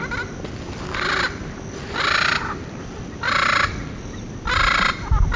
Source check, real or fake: real